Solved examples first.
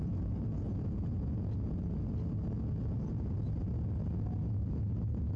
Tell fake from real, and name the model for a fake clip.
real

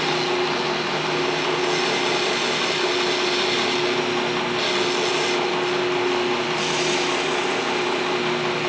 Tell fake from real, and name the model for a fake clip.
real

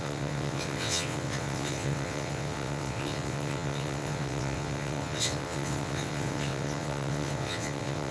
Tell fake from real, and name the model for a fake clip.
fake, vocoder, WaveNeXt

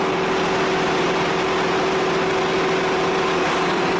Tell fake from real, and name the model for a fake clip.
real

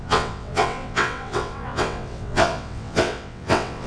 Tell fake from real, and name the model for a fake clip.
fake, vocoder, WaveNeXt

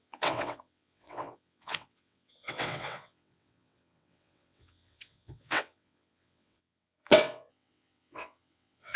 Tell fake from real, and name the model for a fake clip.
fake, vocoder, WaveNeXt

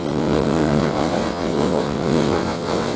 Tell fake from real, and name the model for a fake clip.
fake, vocoder, WaveNeXt